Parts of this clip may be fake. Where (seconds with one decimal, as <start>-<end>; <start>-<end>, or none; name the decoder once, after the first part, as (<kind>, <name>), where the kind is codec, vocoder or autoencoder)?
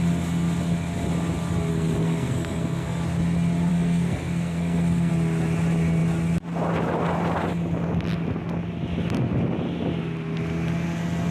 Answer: 1.7-3.0 (codec, SNAC); 3.7-5.1